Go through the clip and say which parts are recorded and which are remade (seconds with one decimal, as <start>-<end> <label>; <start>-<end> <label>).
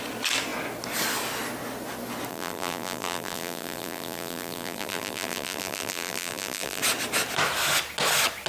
0.0-2.3 recorded; 2.3-6.8 remade; 6.8-8.5 recorded